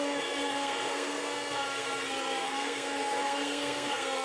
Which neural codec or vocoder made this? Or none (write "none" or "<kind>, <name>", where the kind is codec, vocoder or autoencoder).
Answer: codec, SNAC